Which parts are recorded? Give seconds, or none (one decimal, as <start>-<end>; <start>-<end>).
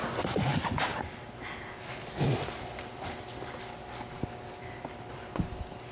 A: 0.0-5.9